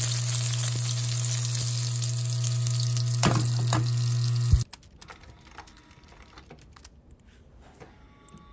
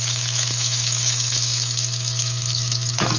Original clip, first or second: first